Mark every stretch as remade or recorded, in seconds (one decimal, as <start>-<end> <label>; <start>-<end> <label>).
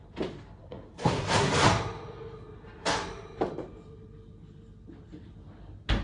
0.0-0.6 recorded; 0.6-1.5 remade; 1.5-6.0 recorded